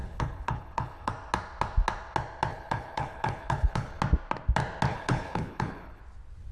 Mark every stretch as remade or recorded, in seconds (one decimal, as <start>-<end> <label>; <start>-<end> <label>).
0.0-1.1 remade; 1.1-2.5 recorded; 2.5-4.0 remade; 4.0-4.9 recorded; 4.9-6.0 remade; 6.0-6.5 recorded